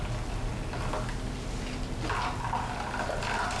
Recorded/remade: recorded